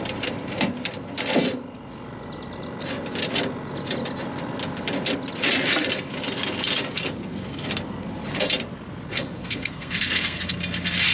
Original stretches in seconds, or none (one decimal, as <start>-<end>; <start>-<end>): 0.0-7.2; 7.7-9.1; 10.5-11.1